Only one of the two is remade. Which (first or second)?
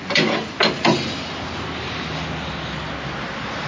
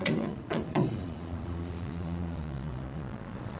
second